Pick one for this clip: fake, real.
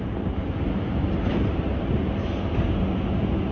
real